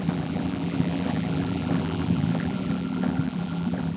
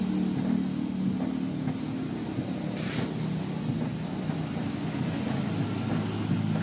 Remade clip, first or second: first